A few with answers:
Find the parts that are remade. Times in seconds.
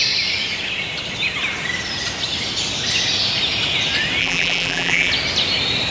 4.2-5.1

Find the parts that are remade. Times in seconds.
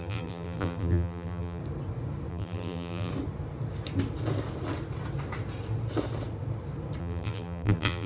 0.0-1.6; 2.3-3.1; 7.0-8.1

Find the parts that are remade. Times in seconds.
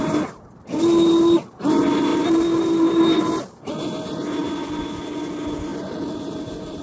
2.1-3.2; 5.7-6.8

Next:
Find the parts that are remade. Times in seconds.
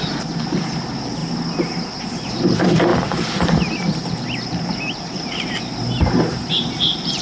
0.0-1.2; 1.9-7.2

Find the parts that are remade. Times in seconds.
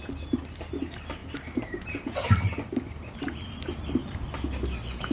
1.2-4.3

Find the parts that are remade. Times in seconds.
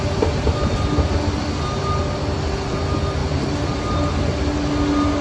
3.2-4.1